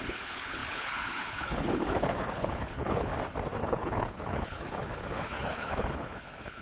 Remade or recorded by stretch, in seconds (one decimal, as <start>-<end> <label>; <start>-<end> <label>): 0.0-3.1 remade; 3.1-3.6 recorded; 3.6-6.6 remade